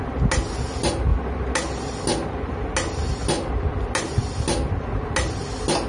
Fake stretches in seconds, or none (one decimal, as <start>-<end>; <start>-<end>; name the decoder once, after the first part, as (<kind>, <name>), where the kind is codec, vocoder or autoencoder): none